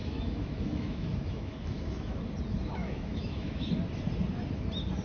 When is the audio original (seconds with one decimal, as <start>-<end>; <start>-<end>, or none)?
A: 2.2-2.8; 3.7-5.0